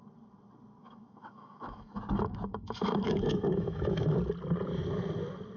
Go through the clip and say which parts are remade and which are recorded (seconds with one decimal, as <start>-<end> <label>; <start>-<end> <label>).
0.0-0.8 recorded; 0.8-4.2 remade; 4.2-5.6 recorded